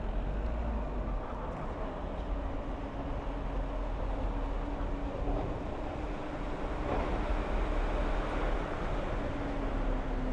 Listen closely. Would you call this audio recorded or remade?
recorded